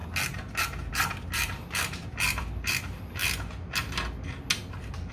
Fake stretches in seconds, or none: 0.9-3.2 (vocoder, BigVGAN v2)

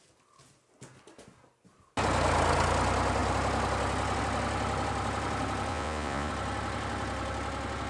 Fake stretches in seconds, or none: 5.7-6.3 (vocoder, Vocos)

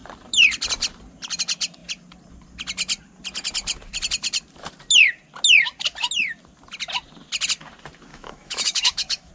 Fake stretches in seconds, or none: 8.1-9.3 (autoencoder, DAC-VAE)

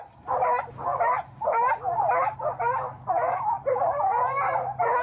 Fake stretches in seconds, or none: none

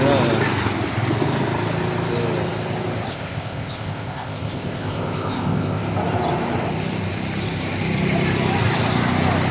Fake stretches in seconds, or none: 3.1-5.8 (codec, ZipCodec)

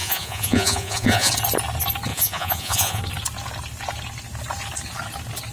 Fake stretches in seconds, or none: 0.0-1.3 (vocoder, Vocos); 2.1-3.0

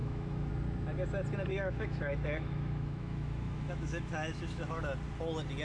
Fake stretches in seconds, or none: 0.0-0.5 (autoencoder, DAC-VAE); 1.5-4.8